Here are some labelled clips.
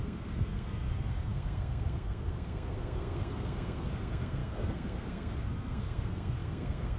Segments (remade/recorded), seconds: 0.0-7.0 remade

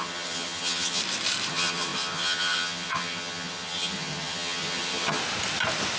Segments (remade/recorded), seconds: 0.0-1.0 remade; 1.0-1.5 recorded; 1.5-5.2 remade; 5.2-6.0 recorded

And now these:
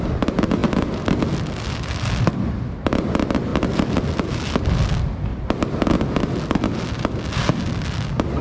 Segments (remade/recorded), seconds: 0.0-8.4 recorded

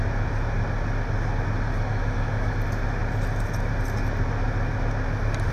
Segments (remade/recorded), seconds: 0.0-1.9 recorded; 1.9-2.5 remade; 2.5-5.5 recorded

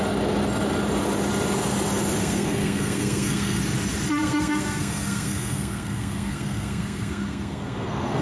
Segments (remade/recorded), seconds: 0.0-2.2 recorded; 2.2-3.6 remade; 3.6-4.2 recorded; 4.2-8.2 remade